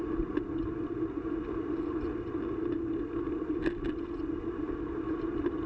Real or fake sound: real